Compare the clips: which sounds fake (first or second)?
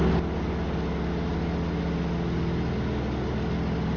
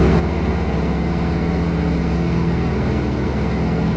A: second